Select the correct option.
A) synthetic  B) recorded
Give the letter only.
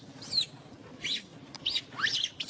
B